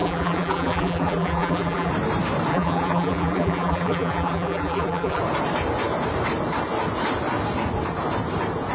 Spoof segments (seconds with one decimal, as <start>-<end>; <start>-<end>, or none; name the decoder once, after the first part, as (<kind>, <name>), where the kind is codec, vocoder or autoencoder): 0.0-1.9 (vocoder, BigVGAN v2); 2.5-5.2